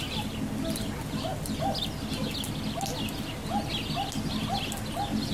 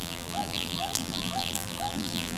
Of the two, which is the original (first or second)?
first